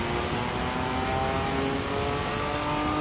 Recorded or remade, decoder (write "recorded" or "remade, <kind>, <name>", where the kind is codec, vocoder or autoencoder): recorded